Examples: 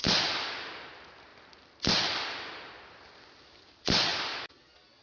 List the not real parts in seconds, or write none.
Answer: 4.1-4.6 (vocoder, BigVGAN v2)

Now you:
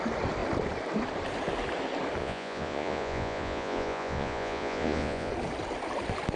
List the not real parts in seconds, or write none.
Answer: 2.2-5.3 (vocoder, Vocos)

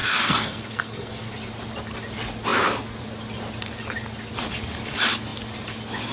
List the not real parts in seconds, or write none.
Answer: 0.0-1.3 (codec, SNAC)

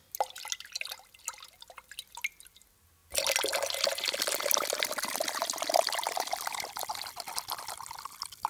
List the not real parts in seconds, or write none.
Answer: none

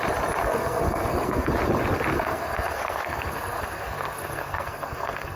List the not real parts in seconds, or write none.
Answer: 0.4-1.5 (codec, SNAC); 2.1-5.4

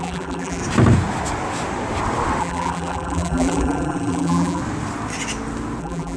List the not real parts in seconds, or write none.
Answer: 0.0-0.6 (vocoder, BigVGAN v2); 2.4-4.6; 5.8-6.2

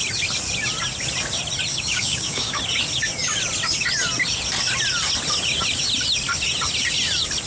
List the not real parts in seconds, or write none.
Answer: 1.7-2.6 (codec, DAC)